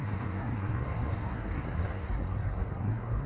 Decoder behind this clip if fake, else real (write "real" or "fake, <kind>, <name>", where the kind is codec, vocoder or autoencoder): fake, codec, SNAC